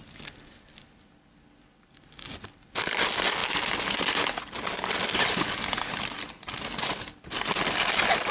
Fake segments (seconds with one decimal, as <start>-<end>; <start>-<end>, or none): none